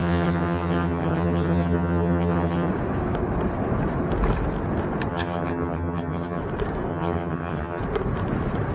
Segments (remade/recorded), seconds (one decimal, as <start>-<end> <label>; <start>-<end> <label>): 0.0-2.7 remade; 2.7-5.1 recorded; 5.1-6.4 remade; 6.4-6.9 recorded; 6.9-7.8 remade; 7.8-8.7 recorded

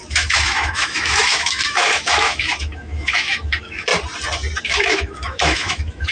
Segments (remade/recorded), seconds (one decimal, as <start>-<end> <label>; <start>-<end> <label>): 0.0-3.9 remade; 3.9-4.6 recorded; 4.6-6.1 remade

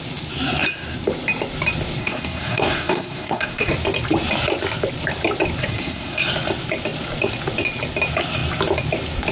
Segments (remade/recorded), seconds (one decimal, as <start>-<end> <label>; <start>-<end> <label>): 0.0-2.0 recorded; 2.0-3.7 remade; 3.7-5.6 recorded; 5.6-6.3 remade; 6.3-9.3 recorded

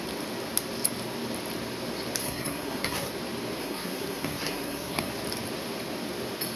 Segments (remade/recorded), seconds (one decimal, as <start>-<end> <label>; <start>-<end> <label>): 0.0-2.2 recorded; 2.2-3.1 remade; 3.1-3.6 recorded; 3.6-5.1 remade; 5.1-6.6 recorded